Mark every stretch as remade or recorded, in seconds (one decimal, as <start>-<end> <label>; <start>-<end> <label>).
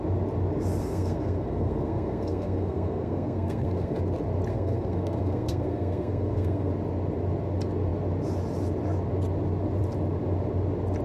0.0-0.8 recorded; 0.8-4.0 remade; 4.0-4.5 recorded; 4.5-6.7 remade; 6.7-11.0 recorded